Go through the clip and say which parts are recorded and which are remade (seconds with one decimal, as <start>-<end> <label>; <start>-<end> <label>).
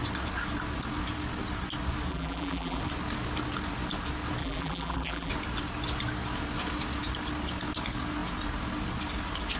0.0-2.1 recorded; 2.1-2.8 remade; 2.8-4.4 recorded; 4.4-5.3 remade; 5.3-9.6 recorded